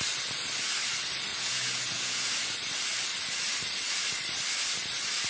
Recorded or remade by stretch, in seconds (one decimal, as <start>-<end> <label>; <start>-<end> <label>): 0.0-1.3 recorded; 1.3-2.3 remade; 2.3-5.3 recorded